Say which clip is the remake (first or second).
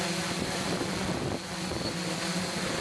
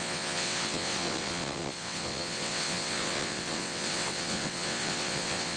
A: second